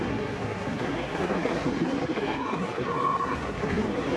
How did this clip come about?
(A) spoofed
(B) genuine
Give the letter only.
A